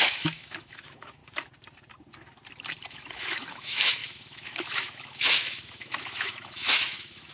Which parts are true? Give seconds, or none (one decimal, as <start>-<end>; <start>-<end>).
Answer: 1.2-2.9